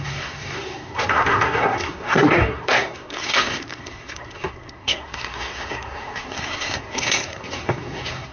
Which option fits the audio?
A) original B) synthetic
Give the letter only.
B